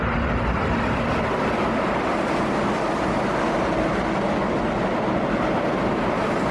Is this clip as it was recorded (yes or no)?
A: yes